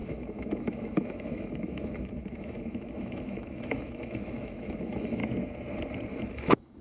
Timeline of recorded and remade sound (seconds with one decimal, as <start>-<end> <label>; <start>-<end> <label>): 0.0-5.2 remade; 5.2-6.3 recorded; 6.3-6.8 remade